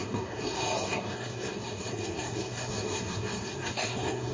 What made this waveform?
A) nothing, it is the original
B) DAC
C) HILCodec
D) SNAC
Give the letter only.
D